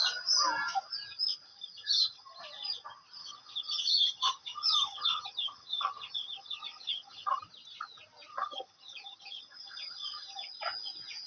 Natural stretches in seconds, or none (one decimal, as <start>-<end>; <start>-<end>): 0.0-1.5; 2.4-3.2; 7.4-8.3; 10.5-11.3